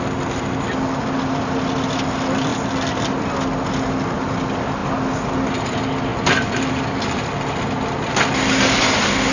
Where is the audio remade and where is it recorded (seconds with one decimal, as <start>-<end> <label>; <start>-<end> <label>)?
0.0-9.3 recorded